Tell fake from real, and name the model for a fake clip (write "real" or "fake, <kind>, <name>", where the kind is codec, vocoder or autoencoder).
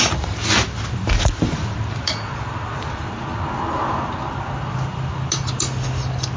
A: real